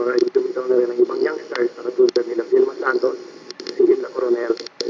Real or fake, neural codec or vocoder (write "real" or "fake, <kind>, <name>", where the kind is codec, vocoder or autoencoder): fake, vocoder, BigVGAN v2